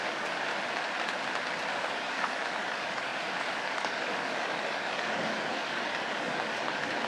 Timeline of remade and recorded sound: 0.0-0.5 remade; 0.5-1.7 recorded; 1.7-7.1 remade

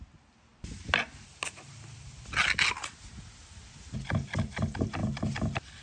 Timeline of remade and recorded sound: 0.0-5.8 recorded

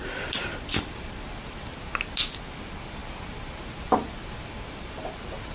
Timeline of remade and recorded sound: 0.0-5.5 recorded

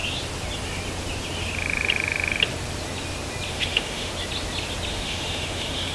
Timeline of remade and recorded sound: 0.0-3.5 recorded; 3.5-4.1 remade; 4.1-4.9 recorded; 4.9-5.9 remade

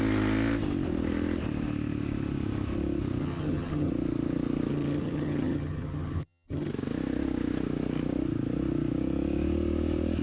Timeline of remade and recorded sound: 0.0-3.2 recorded; 3.2-3.9 remade; 3.9-4.7 recorded; 4.7-6.7 remade; 6.7-10.2 recorded

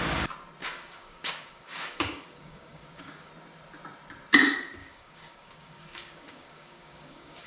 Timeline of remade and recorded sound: 0.0-0.6 recorded; 0.6-3.3 remade; 3.3-4.8 recorded; 4.8-7.5 remade